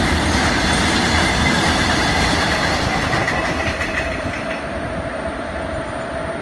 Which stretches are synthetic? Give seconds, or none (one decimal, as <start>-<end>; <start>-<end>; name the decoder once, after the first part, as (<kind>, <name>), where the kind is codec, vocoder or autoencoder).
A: none